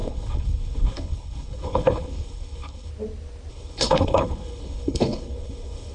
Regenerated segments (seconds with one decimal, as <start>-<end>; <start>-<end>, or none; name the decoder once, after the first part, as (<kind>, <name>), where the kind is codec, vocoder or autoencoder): 0.0-2.9 (codec, HILCodec); 3.5-5.9